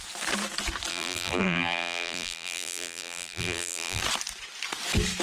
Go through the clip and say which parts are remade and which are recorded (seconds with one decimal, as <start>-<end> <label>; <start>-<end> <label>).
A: 0.0-0.9 recorded; 0.9-4.0 remade; 4.0-5.2 recorded